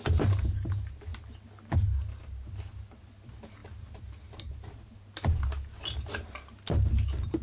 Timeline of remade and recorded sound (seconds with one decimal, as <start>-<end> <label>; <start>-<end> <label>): 0.0-7.4 recorded

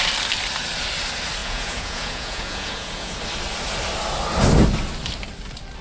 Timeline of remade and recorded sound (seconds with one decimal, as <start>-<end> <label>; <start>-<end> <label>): 0.0-1.4 recorded; 1.4-3.2 remade; 3.2-5.8 recorded

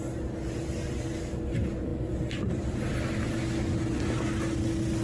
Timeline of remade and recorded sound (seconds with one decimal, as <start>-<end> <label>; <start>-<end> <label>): 0.0-5.0 recorded

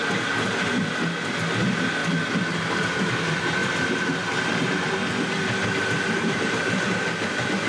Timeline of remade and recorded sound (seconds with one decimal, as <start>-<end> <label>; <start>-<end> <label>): 0.0-7.7 recorded

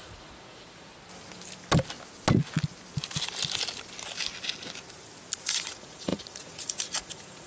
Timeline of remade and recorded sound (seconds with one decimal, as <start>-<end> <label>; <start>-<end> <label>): 0.0-0.9 remade; 0.9-5.4 recorded; 5.4-7.5 remade